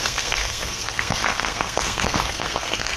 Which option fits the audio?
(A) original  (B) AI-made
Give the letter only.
B